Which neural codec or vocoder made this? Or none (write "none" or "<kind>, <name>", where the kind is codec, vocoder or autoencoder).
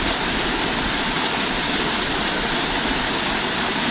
none